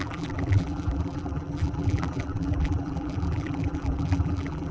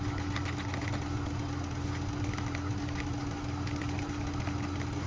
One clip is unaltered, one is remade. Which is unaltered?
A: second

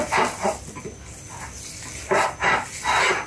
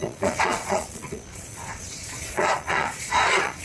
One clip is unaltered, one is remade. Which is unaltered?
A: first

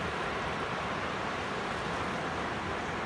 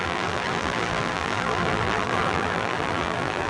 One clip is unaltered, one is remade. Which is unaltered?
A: first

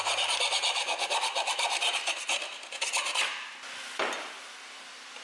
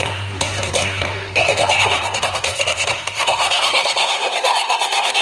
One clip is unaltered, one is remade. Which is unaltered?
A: first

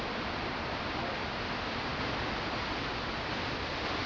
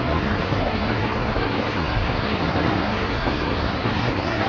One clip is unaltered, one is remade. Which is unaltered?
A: first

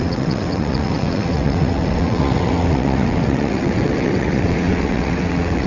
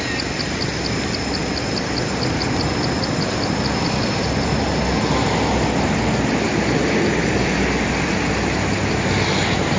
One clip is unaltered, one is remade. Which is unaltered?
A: second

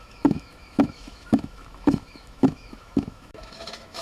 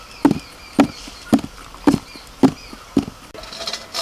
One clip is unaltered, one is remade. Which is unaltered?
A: second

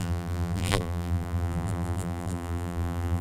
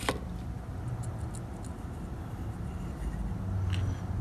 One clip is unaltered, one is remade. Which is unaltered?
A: second